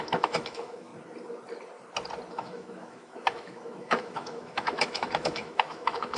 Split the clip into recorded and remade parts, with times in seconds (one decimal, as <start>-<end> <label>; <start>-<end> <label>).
0.0-0.9 remade; 0.9-2.3 recorded; 2.3-6.2 remade